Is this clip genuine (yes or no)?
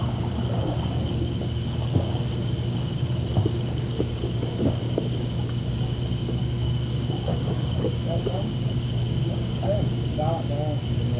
no